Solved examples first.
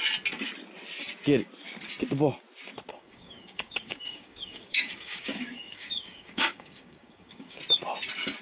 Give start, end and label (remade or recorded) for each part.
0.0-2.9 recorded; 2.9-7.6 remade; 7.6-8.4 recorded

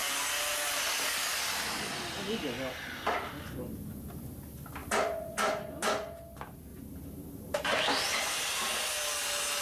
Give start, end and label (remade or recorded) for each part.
0.0-4.8 recorded; 4.8-5.6 remade; 5.6-6.7 recorded; 6.7-8.9 remade; 8.9-9.6 recorded

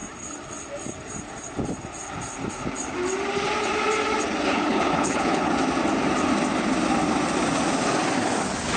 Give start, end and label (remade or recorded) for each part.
0.0-4.5 recorded; 4.5-5.5 remade; 5.5-8.8 recorded

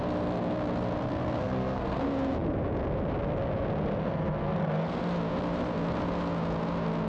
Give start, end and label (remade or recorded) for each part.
0.0-1.1 recorded; 1.1-2.0 remade; 2.0-4.0 recorded; 4.0-5.0 remade; 5.0-7.1 recorded

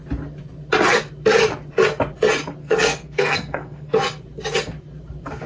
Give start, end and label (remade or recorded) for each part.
0.0-2.6 recorded; 2.6-4.0 remade; 4.0-5.5 recorded

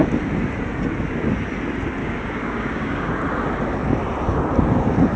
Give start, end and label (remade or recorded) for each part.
0.0-2.0 recorded; 2.0-3.1 remade; 3.1-5.2 recorded